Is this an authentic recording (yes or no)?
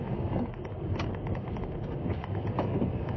no